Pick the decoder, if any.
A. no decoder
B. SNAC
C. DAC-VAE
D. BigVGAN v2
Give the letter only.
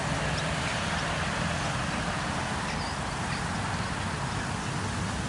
A